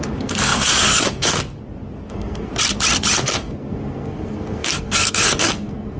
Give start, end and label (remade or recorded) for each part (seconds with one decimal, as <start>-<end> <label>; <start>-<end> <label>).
0.0-1.4 remade; 1.4-2.1 recorded; 2.1-2.5 remade; 2.5-3.2 recorded; 3.2-6.0 remade